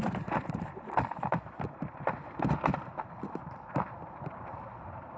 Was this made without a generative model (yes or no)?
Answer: no